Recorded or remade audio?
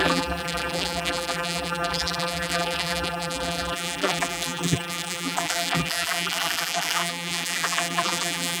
remade